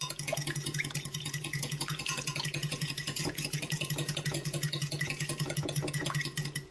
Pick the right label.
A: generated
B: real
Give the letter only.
A